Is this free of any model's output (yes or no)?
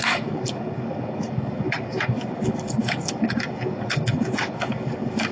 no